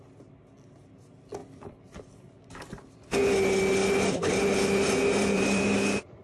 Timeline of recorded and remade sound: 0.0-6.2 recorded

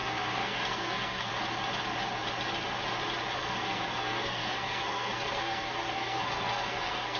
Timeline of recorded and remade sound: 0.0-1.3 remade; 1.3-3.4 recorded; 3.4-7.2 remade